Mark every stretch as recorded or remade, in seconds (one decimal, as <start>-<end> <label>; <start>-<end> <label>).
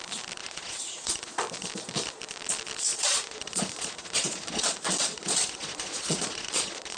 0.0-0.4 recorded; 0.4-1.3 remade; 1.3-2.9 recorded; 2.9-7.0 remade